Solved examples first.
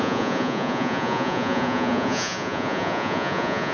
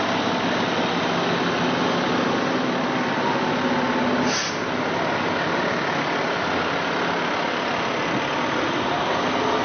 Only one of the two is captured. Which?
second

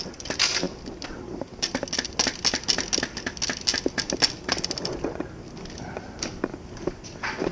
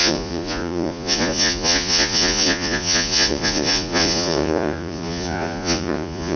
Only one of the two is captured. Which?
first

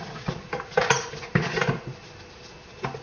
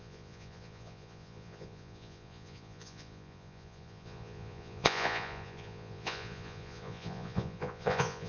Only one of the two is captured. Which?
first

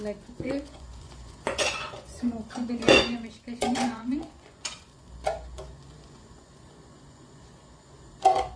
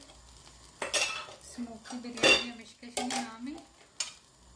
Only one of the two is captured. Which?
second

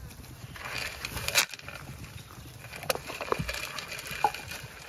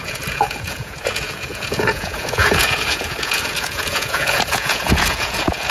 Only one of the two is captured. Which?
first